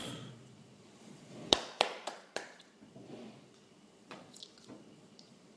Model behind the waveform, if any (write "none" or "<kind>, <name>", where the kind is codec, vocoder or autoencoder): vocoder, Vocos